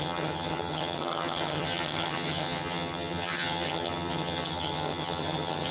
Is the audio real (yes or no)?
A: no